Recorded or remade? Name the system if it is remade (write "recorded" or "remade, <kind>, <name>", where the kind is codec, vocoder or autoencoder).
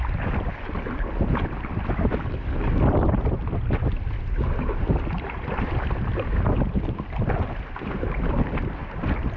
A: recorded